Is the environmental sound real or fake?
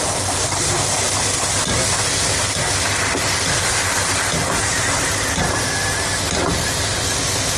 real